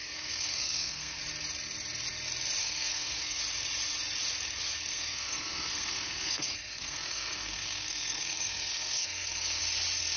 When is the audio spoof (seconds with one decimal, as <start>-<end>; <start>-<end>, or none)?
0.0-1.2; 2.6-3.4; 4.9-9.6